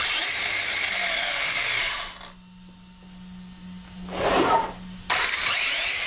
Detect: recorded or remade recorded